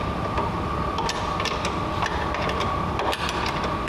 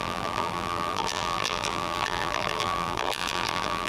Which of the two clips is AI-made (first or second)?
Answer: second